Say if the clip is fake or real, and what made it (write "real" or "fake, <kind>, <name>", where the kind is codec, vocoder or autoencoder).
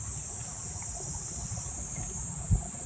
real